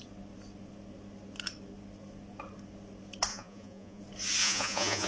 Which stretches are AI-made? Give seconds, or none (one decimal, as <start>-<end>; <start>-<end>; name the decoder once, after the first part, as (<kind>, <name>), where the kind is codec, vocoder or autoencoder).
3.3-4.0 (vocoder, Vocos); 4.4-5.1

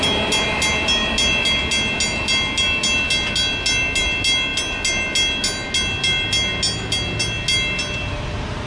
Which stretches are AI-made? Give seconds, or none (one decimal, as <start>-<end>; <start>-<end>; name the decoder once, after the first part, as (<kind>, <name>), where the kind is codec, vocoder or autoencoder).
none